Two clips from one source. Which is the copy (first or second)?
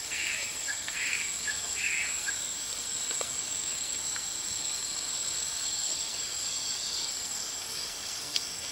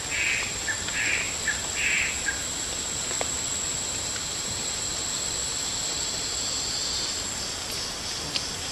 first